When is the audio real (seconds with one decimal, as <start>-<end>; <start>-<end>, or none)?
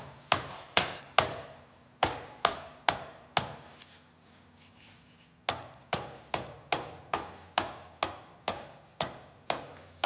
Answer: 0.0-0.5; 1.0-10.1